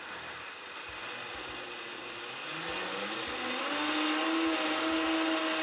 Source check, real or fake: real